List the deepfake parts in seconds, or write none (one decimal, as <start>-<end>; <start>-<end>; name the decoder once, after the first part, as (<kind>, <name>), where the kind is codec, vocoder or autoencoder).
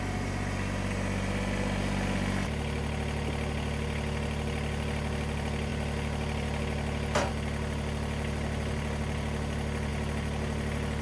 none